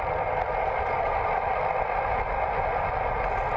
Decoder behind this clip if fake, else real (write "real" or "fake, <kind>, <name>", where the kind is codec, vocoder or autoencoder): real